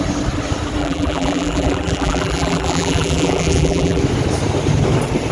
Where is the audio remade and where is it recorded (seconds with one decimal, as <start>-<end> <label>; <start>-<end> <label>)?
0.0-0.8 recorded; 0.8-4.0 remade; 4.0-5.3 recorded